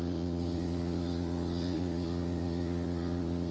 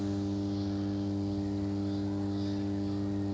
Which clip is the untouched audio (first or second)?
second